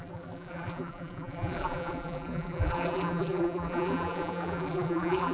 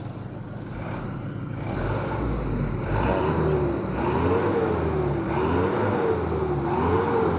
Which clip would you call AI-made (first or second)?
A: first